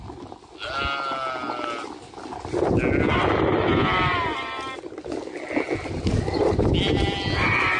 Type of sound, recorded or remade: recorded